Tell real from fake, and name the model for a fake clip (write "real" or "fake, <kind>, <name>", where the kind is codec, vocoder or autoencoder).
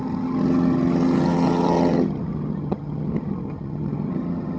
fake, vocoder, HiFi-GAN